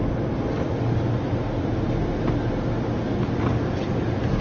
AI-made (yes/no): no